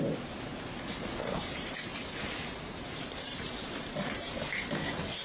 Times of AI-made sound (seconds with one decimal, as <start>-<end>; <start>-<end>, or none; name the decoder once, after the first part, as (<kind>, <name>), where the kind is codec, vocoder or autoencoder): 1.2-4.3 (vocoder, BigVGAN v2)